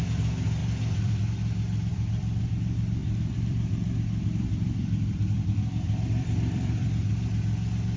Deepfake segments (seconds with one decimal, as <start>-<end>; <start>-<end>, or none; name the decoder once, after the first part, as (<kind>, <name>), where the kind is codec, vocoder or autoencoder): 0.6-1.2 (vocoder, BigVGAN v2); 1.9-2.4; 3.0-7.1